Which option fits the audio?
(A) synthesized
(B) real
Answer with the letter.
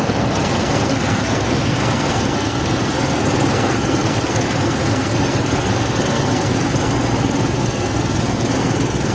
A